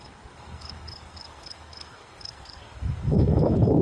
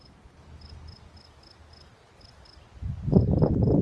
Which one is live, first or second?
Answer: second